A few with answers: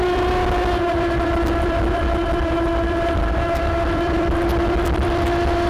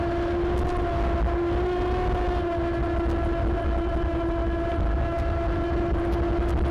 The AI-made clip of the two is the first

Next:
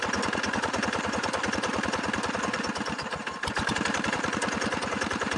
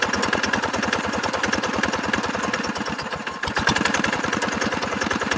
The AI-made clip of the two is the first